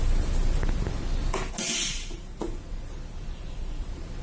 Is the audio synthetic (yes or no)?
no